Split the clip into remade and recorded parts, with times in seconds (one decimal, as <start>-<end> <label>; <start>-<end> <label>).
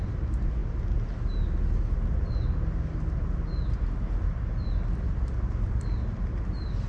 0.0-6.9 recorded